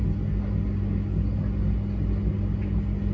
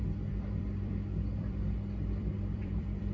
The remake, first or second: second